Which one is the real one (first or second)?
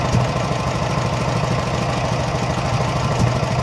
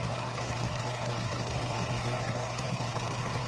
first